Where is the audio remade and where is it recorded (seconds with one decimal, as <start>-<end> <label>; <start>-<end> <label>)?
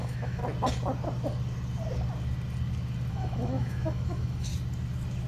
0.0-0.4 remade; 0.4-3.1 recorded; 3.1-4.5 remade; 4.5-5.3 recorded